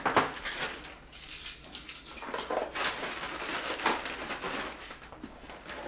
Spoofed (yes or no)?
no